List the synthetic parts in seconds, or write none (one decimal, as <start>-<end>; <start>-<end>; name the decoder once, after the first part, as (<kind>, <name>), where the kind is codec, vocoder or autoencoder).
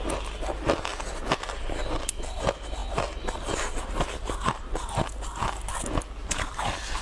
0.9-1.6 (vocoder, BigVGAN v2); 6.2-7.0